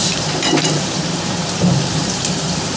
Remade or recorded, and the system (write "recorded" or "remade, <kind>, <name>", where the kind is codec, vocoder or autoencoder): remade, vocoder, BigVGAN v2